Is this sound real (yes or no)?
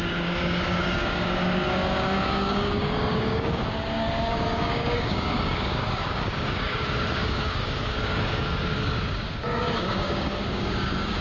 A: no